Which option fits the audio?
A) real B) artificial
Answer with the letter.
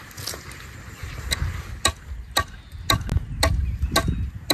A